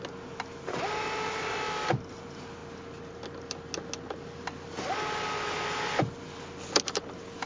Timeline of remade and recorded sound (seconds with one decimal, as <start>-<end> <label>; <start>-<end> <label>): 0.0-7.5 recorded